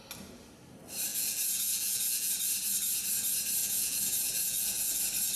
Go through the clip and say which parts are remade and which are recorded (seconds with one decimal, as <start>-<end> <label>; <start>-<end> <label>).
0.0-1.1 recorded; 1.1-2.3 remade; 2.3-3.6 recorded; 3.6-5.0 remade; 5.0-5.4 recorded